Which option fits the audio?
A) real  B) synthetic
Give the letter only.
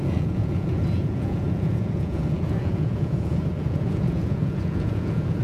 B